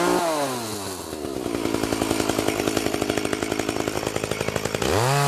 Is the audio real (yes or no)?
yes